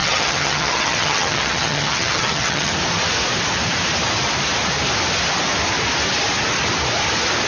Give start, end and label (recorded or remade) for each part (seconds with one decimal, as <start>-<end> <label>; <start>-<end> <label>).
0.0-2.7 remade; 2.7-7.5 recorded